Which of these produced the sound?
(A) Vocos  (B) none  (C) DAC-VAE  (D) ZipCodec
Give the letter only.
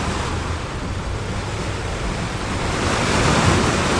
B